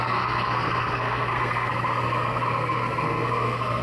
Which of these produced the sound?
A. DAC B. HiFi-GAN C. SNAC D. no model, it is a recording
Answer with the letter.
C